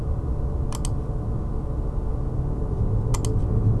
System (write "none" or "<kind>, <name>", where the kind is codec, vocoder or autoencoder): none